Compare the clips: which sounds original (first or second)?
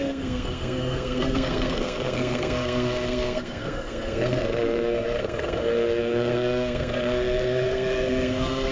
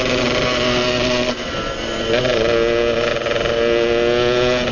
second